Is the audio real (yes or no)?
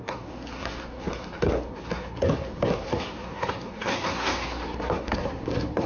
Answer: no